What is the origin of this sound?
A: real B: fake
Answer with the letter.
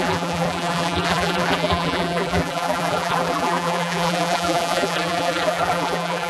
B